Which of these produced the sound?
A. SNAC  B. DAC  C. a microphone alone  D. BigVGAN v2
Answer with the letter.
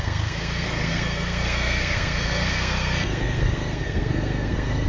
A